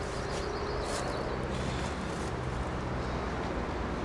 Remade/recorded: recorded